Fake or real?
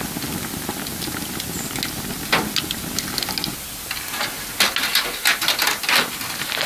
real